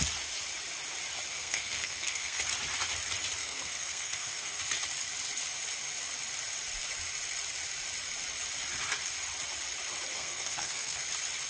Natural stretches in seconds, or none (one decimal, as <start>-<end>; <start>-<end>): 0.0-1.3; 2.4-3.4; 4.6-10.1; 11.0-11.5